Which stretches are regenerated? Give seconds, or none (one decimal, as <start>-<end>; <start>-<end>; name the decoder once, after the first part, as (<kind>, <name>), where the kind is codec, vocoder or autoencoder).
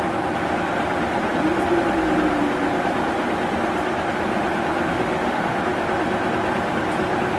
4.9-5.6 (autoencoder, DAC-VAE)